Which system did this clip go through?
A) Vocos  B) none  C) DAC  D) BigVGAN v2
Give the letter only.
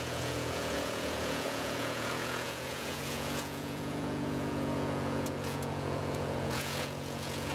A